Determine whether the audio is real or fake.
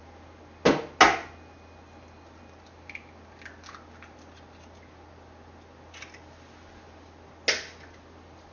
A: real